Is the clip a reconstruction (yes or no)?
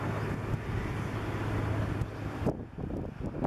no